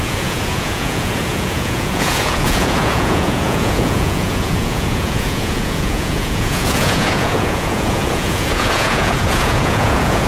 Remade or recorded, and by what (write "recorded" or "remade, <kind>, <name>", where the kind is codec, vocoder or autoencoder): remade, vocoder, Vocos